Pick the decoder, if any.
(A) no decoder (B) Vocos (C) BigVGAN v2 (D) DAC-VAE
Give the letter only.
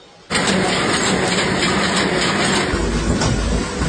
A